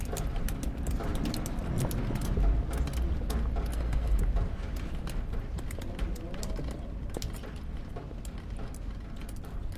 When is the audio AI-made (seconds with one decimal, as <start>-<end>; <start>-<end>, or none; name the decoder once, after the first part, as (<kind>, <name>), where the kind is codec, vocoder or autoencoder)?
3.7-4.2 (codec, SNAC)